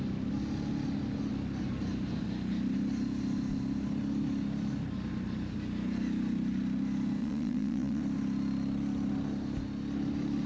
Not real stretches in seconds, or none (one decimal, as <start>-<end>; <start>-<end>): 7.2-8.0